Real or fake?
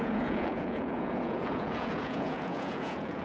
fake